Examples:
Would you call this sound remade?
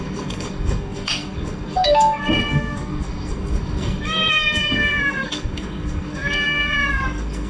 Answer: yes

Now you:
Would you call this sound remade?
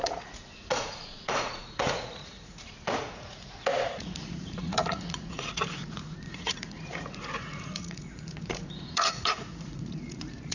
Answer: yes